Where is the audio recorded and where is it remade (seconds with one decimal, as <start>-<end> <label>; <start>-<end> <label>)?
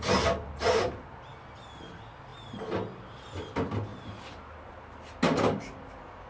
0.0-6.3 recorded